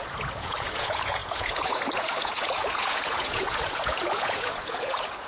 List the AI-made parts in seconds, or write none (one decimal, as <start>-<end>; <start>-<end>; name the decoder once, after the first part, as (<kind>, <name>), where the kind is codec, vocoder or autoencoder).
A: 0.0-5.3 (vocoder, Vocos)